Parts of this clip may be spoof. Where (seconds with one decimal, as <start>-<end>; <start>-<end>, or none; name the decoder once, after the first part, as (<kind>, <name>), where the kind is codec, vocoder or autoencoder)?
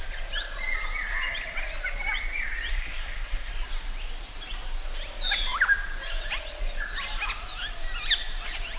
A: 2.7-3.5 (codec, SNAC)